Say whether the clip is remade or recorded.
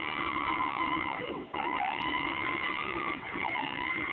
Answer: remade